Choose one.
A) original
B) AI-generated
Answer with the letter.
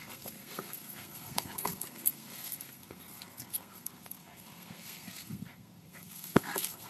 B